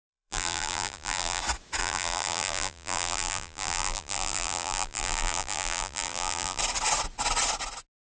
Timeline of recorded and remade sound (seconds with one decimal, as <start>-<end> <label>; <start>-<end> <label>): 0.0-1.4 remade; 1.4-1.8 recorded; 1.8-6.6 remade; 6.6-8.0 recorded